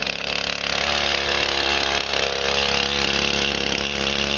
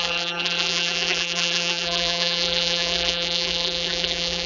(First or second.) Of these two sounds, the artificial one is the second